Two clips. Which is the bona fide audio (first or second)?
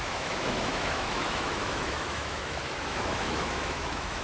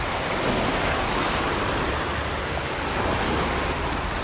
second